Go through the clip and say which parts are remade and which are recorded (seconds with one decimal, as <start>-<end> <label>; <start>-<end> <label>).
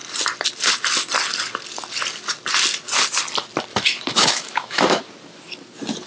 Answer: 0.0-3.7 recorded; 3.7-5.0 remade; 5.0-6.1 recorded